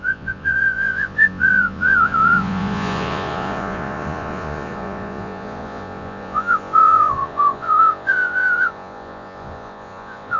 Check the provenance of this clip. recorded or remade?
remade